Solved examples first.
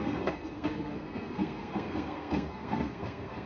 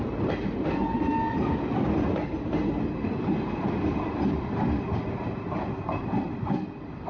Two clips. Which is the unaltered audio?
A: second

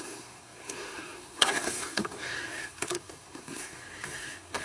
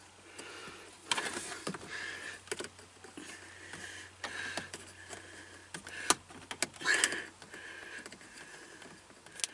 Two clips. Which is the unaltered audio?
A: second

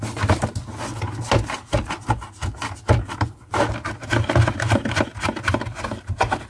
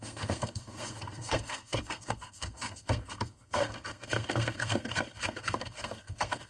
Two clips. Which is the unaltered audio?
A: first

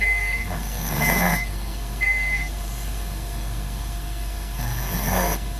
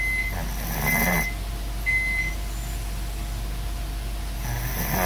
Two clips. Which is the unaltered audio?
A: second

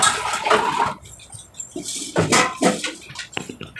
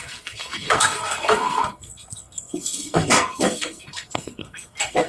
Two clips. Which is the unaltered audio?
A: first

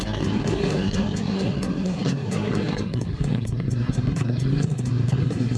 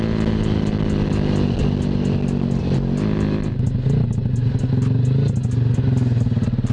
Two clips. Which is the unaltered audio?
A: second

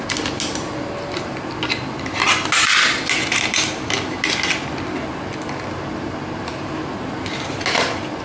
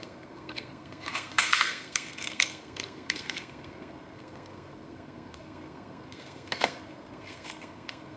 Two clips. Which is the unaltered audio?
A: first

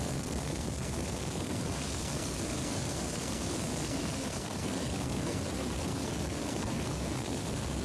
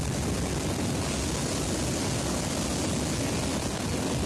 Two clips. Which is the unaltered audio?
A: second